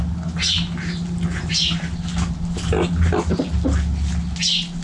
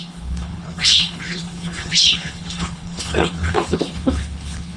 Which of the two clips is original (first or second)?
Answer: first